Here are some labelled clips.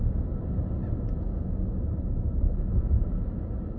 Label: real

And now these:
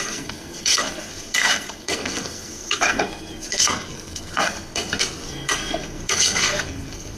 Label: fake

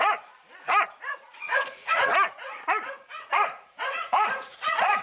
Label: fake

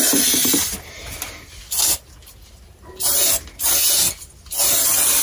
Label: real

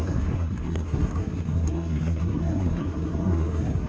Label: fake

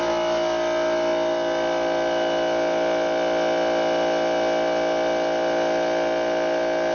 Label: real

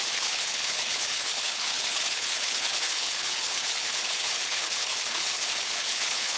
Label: fake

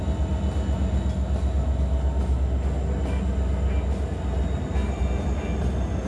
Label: real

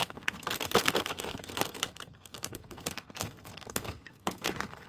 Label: fake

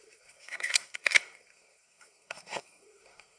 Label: fake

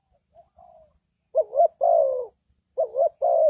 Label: real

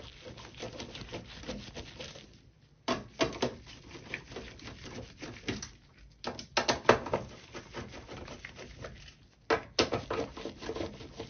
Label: real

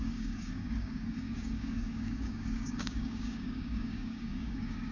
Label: fake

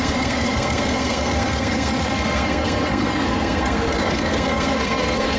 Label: fake